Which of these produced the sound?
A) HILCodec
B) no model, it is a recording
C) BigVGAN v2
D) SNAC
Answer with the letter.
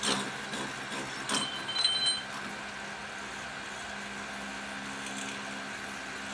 B